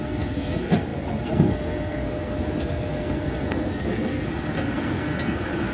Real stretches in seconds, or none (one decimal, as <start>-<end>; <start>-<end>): none